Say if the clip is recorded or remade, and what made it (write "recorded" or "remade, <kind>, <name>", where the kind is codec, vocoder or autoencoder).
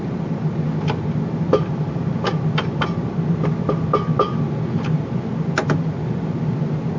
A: recorded